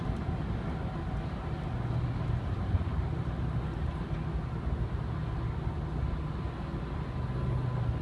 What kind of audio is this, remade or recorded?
recorded